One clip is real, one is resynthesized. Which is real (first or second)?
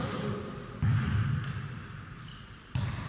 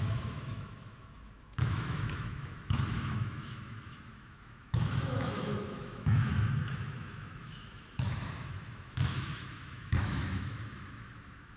first